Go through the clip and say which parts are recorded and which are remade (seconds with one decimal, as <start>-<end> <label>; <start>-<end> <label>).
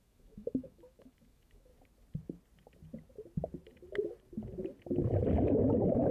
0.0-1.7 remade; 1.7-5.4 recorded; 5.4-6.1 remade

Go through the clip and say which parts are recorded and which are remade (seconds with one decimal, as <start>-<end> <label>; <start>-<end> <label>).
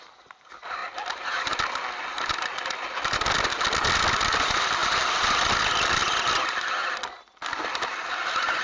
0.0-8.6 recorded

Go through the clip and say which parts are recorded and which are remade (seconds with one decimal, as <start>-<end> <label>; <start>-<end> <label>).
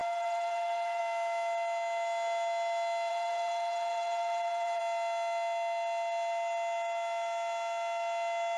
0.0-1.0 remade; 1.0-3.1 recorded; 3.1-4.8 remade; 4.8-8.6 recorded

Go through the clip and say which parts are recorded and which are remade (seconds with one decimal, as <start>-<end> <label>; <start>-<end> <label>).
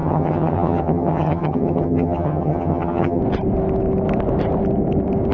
0.0-3.2 remade; 3.2-5.3 recorded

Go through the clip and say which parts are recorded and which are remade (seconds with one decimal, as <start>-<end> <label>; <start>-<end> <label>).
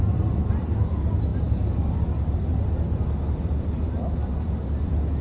0.0-5.2 remade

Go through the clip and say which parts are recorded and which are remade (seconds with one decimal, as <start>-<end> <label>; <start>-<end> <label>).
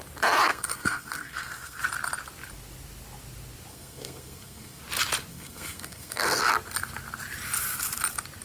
0.0-0.5 recorded; 0.5-1.8 remade; 1.8-3.7 recorded; 3.7-4.8 remade; 4.8-5.3 recorded; 5.3-6.4 remade; 6.4-8.4 recorded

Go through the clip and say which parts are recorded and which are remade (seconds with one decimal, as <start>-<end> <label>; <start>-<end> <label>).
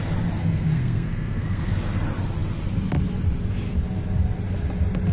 0.0-0.4 recorded; 0.4-1.7 remade; 1.7-5.1 recorded